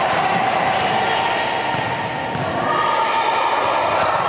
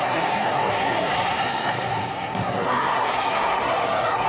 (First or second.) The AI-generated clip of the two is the second